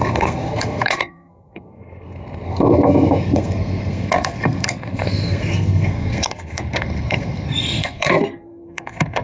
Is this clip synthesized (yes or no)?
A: yes